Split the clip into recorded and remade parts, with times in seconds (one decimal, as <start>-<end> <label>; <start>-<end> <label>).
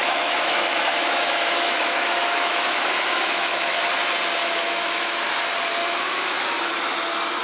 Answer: 0.0-3.9 remade; 3.9-4.4 recorded; 4.4-5.3 remade; 5.3-5.8 recorded; 5.8-6.7 remade; 6.7-7.4 recorded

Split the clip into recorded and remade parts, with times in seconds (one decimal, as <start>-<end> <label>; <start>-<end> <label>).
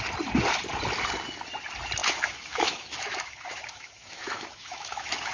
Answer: 0.0-2.0 recorded; 2.0-5.3 remade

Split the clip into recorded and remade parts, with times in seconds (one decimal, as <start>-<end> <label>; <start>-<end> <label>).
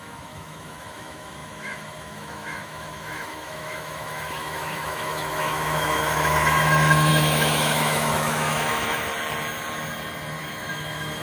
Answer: 0.0-9.1 remade; 9.1-10.4 recorded; 10.4-11.2 remade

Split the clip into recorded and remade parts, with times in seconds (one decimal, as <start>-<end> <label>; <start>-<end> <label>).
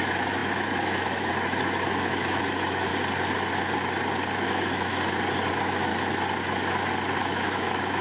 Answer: 0.0-2.9 remade; 2.9-4.4 recorded; 4.4-4.9 remade; 4.9-5.5 recorded; 5.5-5.9 remade; 5.9-7.2 recorded; 7.2-8.0 remade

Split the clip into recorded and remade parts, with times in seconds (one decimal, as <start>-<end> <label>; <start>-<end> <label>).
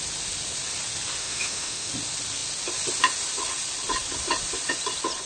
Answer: 0.0-1.2 recorded; 1.2-1.9 remade; 1.9-5.3 recorded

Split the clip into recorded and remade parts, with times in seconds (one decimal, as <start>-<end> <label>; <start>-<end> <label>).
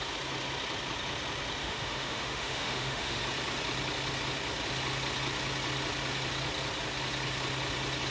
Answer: 0.0-1.6 recorded; 1.6-3.2 remade; 3.2-8.1 recorded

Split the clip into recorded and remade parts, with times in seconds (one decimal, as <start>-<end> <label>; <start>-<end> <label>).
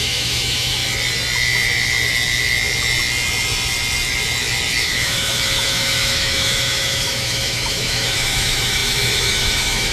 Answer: 0.0-0.8 remade; 0.8-4.8 recorded; 4.8-9.9 remade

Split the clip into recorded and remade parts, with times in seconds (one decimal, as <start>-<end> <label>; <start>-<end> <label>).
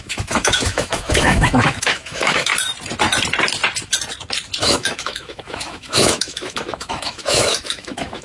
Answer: 0.0-2.5 remade; 2.5-4.6 recorded; 4.6-8.2 remade